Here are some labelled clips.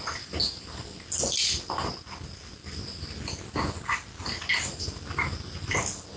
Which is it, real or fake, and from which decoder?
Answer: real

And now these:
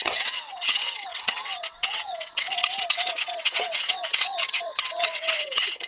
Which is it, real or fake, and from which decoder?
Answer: fake, vocoder, WaveNeXt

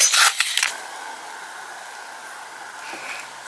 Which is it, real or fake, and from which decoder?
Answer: real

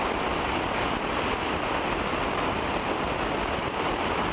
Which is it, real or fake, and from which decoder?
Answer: real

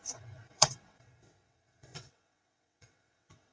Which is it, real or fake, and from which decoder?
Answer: fake, vocoder, WaveNeXt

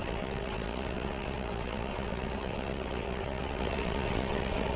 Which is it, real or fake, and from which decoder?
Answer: fake, vocoder, WaveNeXt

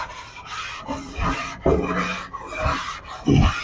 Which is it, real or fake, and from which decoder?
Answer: real